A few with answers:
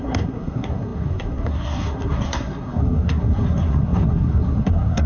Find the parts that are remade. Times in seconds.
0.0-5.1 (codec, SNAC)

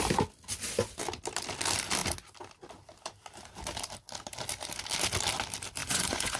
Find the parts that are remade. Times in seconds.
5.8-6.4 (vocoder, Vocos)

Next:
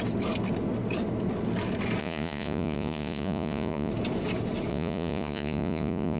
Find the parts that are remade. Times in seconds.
2.0-3.9 (vocoder, Vocos); 4.7-6.2